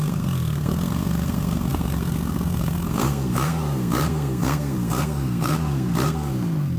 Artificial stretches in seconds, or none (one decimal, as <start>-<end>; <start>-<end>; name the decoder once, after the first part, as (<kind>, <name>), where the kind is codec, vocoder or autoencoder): 0.0-6.8 (codec, SNAC)